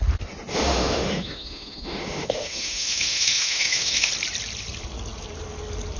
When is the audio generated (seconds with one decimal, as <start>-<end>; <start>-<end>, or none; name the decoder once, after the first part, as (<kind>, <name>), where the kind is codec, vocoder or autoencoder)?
0.5-4.1 (autoencoder, DAC-VAE)